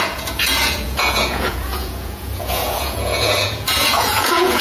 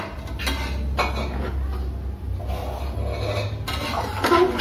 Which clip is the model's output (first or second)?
first